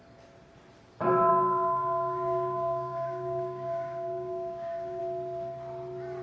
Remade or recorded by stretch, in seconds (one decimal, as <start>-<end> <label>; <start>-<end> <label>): 0.0-1.3 recorded; 1.3-5.0 remade; 5.0-6.2 recorded